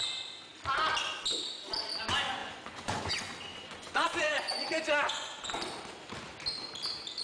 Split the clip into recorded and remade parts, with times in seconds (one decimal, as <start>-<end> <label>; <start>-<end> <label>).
0.0-2.4 recorded; 2.4-3.1 remade; 3.1-3.5 recorded; 3.5-5.5 remade; 5.5-7.2 recorded